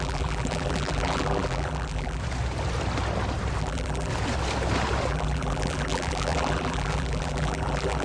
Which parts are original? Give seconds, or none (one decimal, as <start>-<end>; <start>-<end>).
2.2-3.6; 4.1-5.1